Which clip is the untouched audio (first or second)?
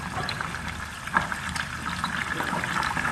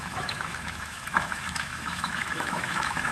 first